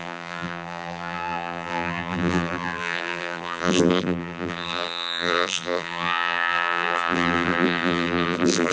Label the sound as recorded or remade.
remade